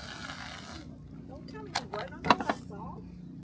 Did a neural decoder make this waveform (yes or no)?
no